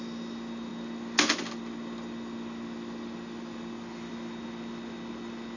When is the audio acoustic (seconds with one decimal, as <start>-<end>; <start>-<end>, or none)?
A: 0.0-5.6

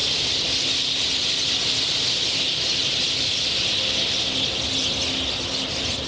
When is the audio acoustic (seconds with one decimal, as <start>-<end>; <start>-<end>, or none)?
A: 0.0-6.1